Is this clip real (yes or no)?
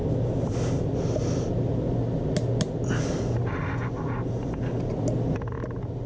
yes